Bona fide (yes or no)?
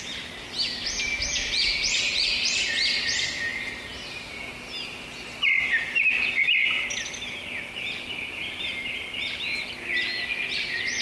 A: yes